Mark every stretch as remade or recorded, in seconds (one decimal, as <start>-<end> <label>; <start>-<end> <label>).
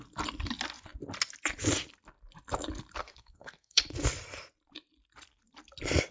0.0-3.0 recorded; 3.0-3.8 remade; 3.8-6.1 recorded